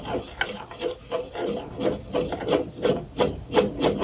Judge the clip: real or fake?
real